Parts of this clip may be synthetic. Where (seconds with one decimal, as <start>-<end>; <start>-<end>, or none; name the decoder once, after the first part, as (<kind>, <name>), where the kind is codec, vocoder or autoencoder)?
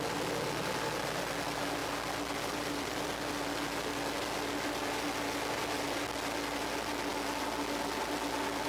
none